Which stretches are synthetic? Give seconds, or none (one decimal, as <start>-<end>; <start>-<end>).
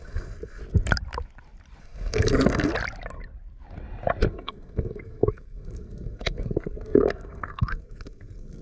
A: 0.0-0.6; 1.8-2.7; 4.3-8.6